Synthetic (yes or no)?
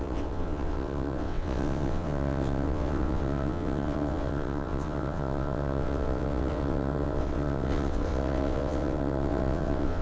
yes